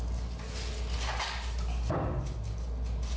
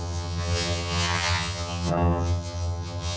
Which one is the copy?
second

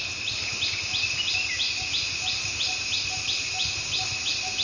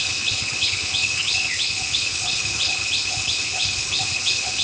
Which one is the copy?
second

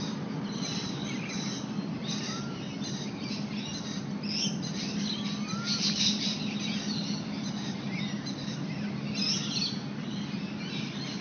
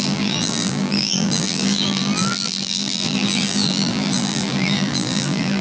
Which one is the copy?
second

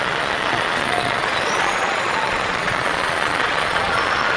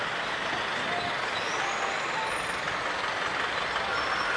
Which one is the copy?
first